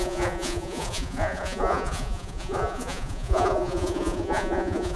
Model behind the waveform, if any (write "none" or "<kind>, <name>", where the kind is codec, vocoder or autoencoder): vocoder, Vocos